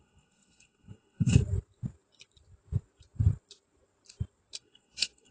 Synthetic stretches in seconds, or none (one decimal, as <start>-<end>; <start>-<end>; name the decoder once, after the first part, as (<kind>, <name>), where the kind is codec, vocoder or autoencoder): 0.0-1.4 (codec, SNAC); 4.6-5.3